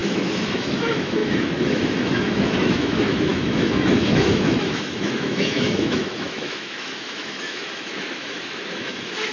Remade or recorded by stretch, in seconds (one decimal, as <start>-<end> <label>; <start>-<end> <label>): 0.0-9.3 remade